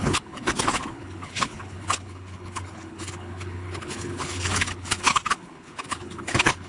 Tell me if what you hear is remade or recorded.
remade